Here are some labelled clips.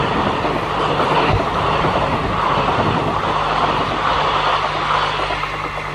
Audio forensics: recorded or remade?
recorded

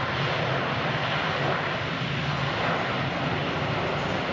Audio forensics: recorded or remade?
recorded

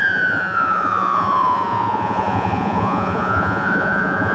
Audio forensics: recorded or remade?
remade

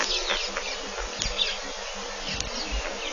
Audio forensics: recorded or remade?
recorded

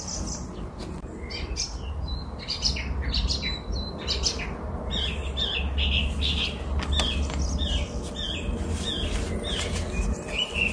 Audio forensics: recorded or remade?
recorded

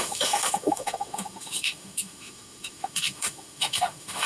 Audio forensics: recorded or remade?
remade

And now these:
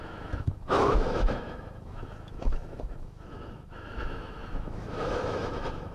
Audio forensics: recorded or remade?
remade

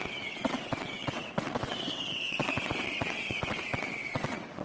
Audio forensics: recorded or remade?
remade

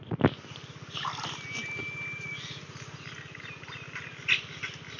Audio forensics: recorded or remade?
recorded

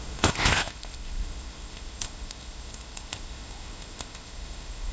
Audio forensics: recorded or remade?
remade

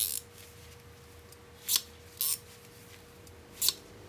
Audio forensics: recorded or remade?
recorded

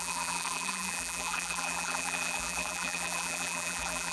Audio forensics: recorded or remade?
remade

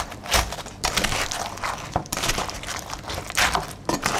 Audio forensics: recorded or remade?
remade